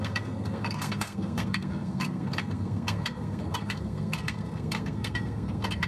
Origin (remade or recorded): remade